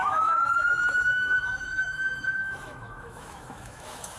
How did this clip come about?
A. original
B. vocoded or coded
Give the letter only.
B